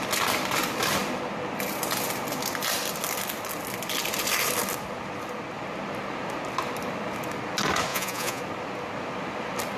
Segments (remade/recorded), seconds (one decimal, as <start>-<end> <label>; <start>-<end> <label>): 0.0-7.9 recorded; 7.9-8.4 remade; 8.4-9.8 recorded